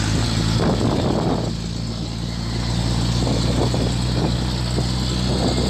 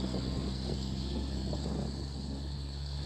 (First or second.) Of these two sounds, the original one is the first